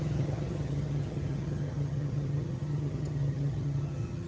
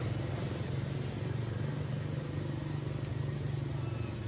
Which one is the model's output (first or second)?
first